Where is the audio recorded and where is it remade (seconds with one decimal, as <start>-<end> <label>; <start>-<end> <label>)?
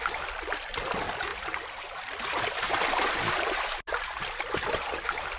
0.0-5.4 recorded